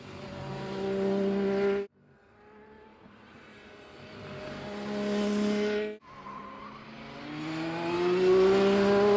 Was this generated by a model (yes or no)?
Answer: no